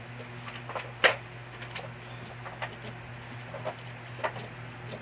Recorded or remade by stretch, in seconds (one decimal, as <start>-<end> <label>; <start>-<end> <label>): 0.0-5.0 recorded